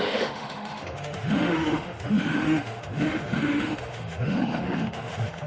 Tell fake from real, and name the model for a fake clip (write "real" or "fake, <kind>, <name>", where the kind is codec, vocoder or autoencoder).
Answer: fake, autoencoder, DAC-VAE